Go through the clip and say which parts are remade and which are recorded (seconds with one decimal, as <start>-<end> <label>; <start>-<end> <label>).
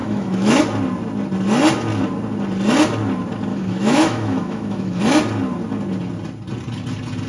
0.0-0.6 remade; 0.6-3.5 recorded; 3.5-5.0 remade; 5.0-7.3 recorded